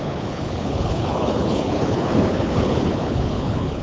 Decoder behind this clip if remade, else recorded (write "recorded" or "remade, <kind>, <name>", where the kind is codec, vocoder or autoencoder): remade, codec, HILCodec